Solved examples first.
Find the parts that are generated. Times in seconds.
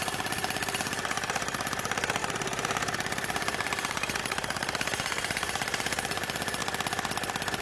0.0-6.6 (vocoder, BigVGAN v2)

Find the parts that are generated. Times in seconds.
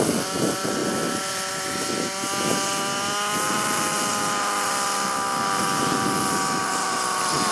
none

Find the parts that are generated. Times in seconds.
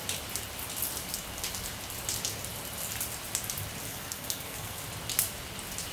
3.9-4.8 (codec, SNAC)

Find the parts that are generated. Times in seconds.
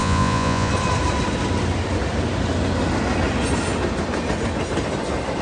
0.0-0.7 (vocoder, Vocos)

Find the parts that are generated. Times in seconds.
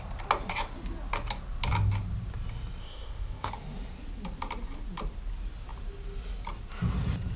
2.8-3.5 (codec, ZipCodec)